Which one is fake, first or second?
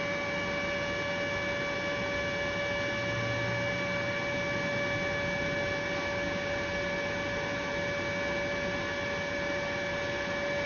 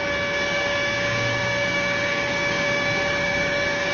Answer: second